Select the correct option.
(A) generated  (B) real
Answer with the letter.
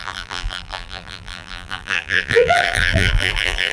A